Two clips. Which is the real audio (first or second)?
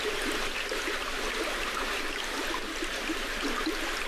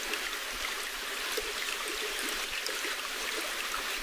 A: first